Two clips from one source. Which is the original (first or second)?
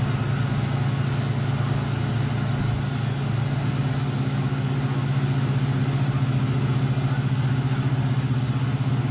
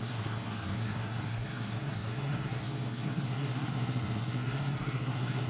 first